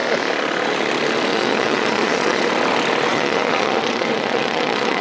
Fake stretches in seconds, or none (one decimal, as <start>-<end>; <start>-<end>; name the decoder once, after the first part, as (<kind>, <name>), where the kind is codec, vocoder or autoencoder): 1.3-2.4 (vocoder, Vocos); 3.1-5.0